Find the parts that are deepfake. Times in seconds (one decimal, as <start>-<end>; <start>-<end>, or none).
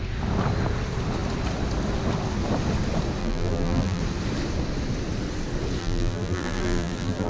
3.2-4.0; 5.8-7.3